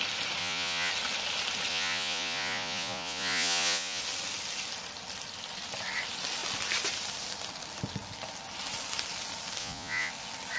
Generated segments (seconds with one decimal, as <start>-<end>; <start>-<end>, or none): 0.4-0.9; 1.7-4.0; 9.6-10.1

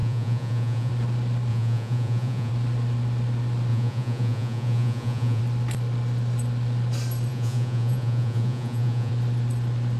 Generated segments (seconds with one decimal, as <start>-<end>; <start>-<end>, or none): 0.0-0.9; 1.5-2.5; 3.7-5.4; 7.3-9.1

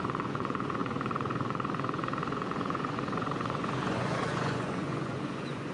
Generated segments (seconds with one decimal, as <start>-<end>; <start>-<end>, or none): 0.0-5.7

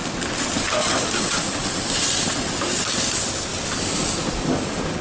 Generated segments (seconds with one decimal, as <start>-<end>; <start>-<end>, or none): none

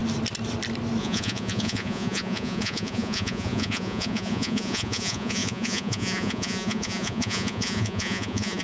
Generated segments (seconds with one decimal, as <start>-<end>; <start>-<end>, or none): 1.0-8.6